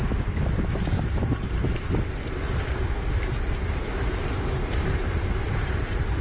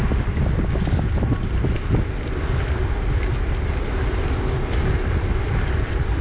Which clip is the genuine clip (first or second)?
second